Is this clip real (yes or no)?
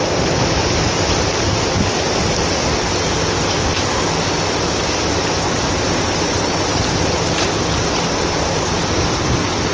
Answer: yes